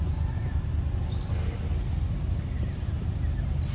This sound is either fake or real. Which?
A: real